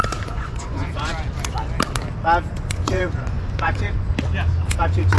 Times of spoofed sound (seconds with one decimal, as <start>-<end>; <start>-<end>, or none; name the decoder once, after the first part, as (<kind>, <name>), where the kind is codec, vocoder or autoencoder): 0.0-1.1 (vocoder, Vocos); 2.5-4.1; 4.7-5.2